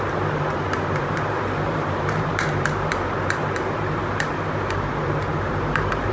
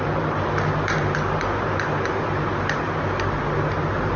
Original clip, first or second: second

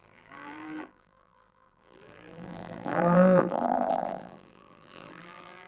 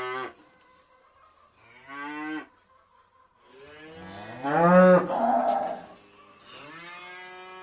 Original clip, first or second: second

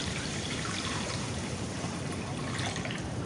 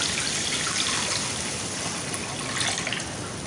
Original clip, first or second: second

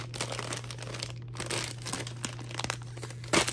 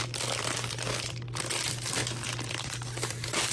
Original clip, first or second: first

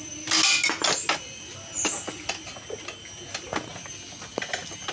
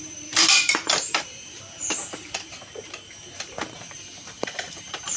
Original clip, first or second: first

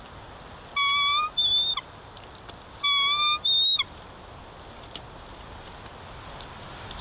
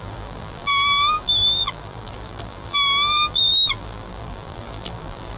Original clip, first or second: first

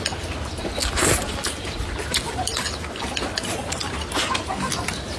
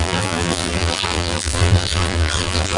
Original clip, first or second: first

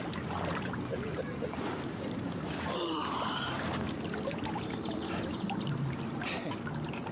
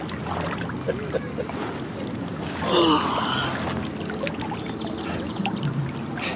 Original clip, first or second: second